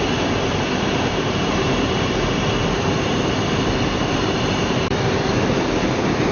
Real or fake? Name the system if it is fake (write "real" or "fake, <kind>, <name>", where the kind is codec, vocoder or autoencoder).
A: fake, vocoder, BigVGAN v2